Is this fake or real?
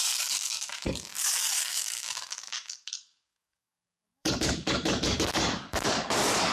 fake